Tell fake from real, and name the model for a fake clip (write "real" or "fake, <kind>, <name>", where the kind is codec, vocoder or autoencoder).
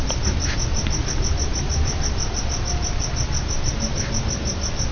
real